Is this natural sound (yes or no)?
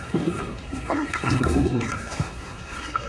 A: no